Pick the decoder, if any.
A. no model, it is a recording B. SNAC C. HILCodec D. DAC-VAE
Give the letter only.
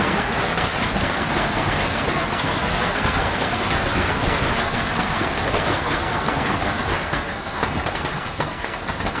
B